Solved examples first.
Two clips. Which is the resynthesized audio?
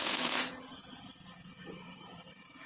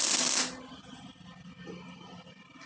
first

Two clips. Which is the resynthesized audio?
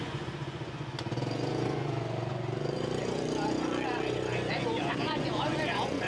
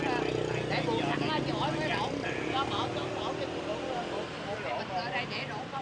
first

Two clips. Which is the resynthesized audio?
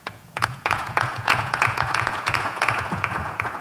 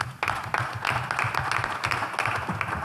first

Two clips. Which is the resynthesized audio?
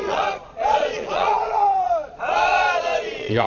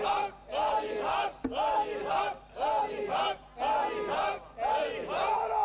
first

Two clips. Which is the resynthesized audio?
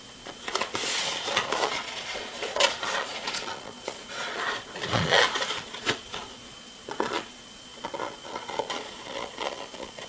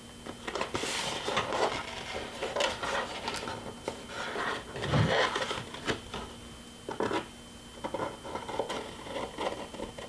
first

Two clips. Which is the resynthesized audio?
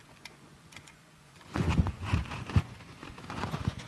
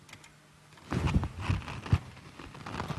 first